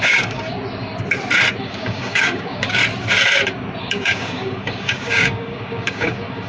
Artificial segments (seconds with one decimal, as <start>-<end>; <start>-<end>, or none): 0.0-0.5; 1.6-2.8; 3.8-6.5